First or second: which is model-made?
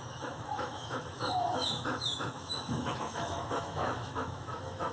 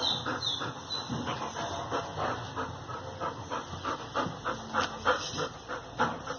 first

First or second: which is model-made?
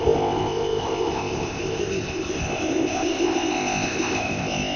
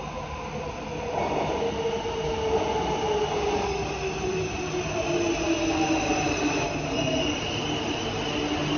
first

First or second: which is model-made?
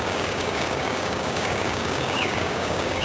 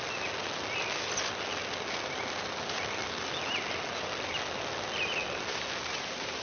first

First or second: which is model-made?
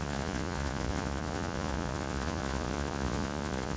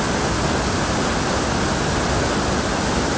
first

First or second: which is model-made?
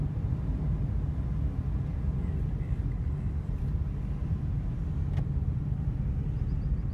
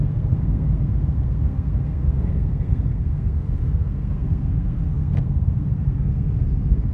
second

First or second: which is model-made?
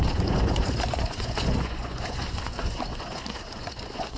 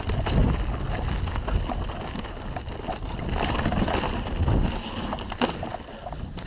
first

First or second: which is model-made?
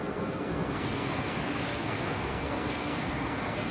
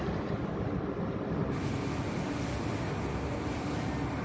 first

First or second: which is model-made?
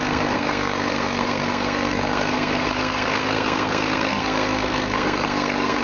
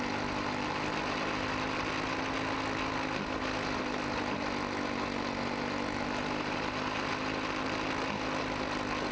first